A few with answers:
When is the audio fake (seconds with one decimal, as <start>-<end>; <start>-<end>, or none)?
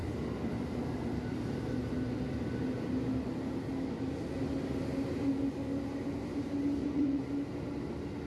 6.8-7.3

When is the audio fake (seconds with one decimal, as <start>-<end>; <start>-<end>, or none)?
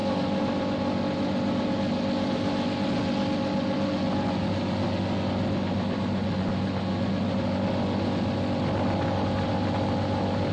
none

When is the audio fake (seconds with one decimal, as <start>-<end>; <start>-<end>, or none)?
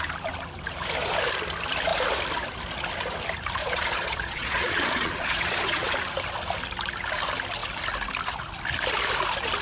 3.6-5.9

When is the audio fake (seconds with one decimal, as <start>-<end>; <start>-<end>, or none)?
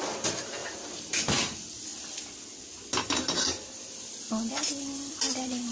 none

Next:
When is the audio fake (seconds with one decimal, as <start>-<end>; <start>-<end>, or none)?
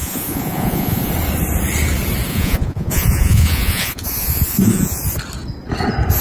0.0-1.1; 2.3-5.0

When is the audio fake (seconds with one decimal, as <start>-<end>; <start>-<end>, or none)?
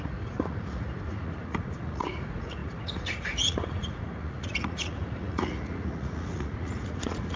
0.0-7.4